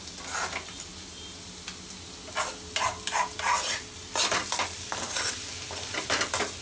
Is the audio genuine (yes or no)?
yes